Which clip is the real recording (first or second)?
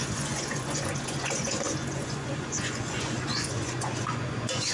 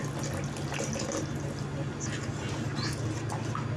second